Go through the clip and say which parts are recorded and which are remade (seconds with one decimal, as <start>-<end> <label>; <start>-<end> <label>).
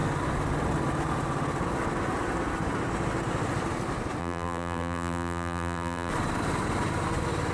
0.0-4.2 recorded; 4.2-6.1 remade; 6.1-7.5 recorded